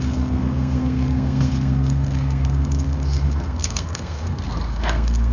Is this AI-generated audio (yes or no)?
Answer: yes